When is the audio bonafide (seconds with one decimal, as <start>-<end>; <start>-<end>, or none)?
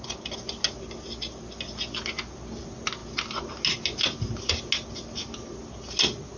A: 0.0-6.4